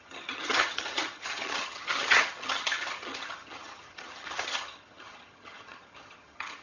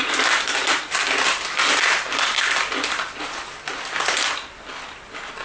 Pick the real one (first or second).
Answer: second